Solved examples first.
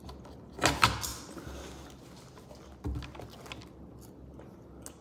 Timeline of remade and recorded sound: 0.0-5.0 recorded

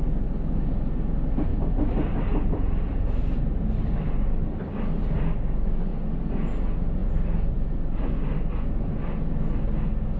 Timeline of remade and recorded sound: 0.0-1.5 recorded; 1.5-4.1 remade; 4.1-7.0 recorded; 7.0-8.6 remade; 8.6-10.2 recorded

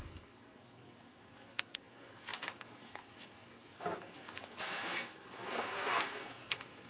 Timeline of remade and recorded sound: 0.0-6.9 remade

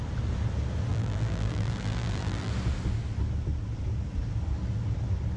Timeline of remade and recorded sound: 0.0-0.9 recorded; 0.9-2.5 remade; 2.5-5.4 recorded

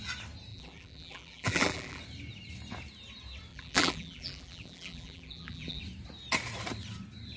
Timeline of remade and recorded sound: 0.0-0.5 recorded; 0.5-2.0 remade; 2.0-3.5 recorded; 3.5-5.8 remade; 5.8-7.4 recorded

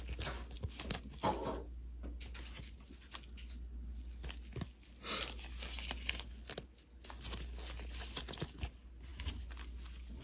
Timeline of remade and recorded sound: 0.0-10.2 recorded

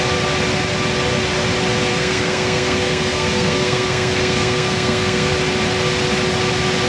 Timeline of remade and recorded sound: 0.0-1.9 recorded; 1.9-5.3 remade; 5.3-6.9 recorded